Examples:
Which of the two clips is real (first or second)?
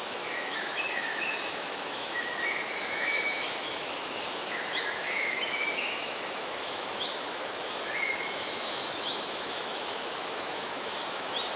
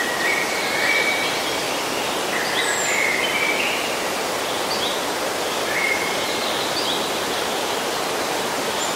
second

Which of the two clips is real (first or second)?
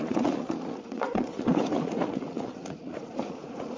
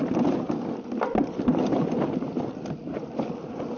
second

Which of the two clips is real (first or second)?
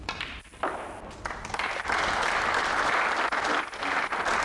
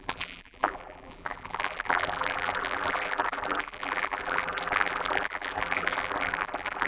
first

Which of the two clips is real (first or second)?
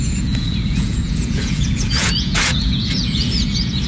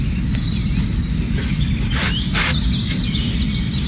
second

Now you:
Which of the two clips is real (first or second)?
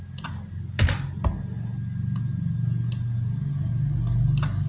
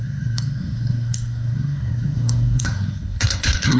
first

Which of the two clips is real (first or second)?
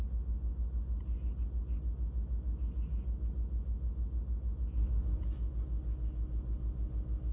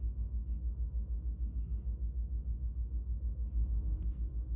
first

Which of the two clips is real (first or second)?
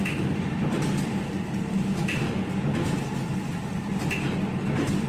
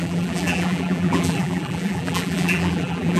first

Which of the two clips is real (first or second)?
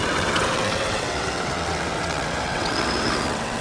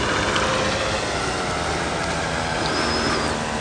second